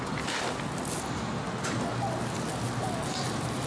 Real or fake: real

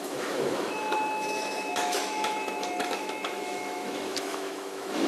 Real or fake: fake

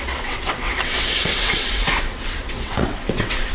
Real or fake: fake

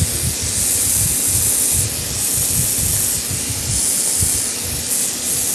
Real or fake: real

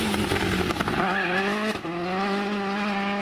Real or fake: real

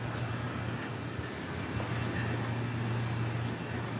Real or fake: real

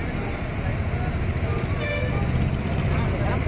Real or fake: real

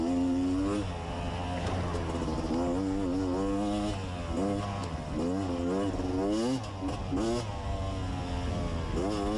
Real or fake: real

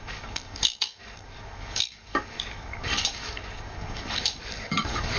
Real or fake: fake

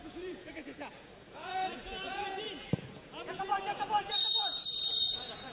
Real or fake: fake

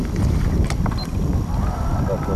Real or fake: fake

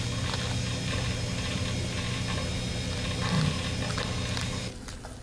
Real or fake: real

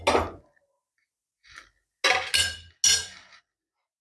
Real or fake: real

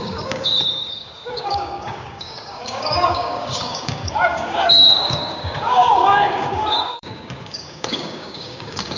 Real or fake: fake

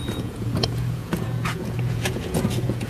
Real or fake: fake